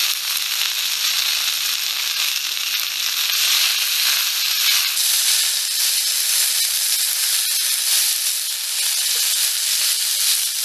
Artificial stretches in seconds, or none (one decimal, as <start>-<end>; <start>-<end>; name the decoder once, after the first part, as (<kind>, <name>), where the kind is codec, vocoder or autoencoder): 7.2-8.2 (vocoder, BigVGAN v2)